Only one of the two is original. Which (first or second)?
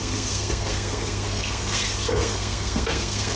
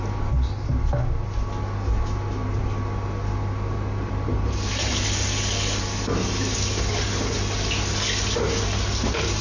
second